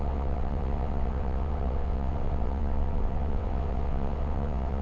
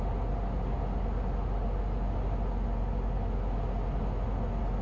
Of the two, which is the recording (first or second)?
second